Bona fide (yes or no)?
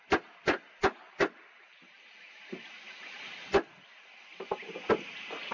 yes